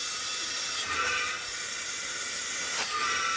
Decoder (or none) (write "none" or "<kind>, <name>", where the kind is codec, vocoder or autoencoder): none